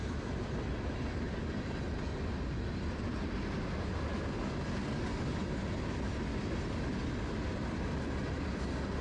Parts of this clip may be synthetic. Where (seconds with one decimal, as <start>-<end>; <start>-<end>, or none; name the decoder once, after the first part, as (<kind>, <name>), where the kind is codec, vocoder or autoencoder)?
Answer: none

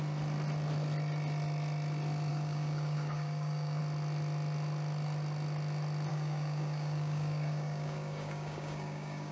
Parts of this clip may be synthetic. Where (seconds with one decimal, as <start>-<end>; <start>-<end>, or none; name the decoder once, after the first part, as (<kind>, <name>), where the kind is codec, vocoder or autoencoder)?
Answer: 2.3-3.8 (codec, DAC); 6.1-9.3

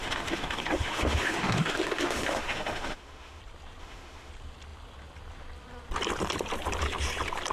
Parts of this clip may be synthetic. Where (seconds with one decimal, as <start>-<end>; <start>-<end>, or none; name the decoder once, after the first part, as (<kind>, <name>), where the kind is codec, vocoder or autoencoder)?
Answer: 0.0-3.4 (autoencoder, DAC-VAE); 3.8-4.3

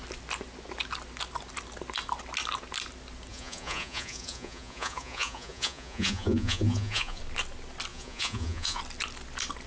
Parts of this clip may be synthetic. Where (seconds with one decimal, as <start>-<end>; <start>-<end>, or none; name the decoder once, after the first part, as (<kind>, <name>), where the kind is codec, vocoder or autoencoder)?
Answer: 3.3-7.2 (vocoder, Vocos); 7.9-8.8

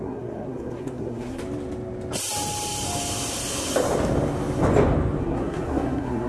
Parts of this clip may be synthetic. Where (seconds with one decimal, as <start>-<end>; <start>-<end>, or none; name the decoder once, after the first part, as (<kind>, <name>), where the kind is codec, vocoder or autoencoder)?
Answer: 0.0-1.4 (codec, SNAC); 5.2-6.3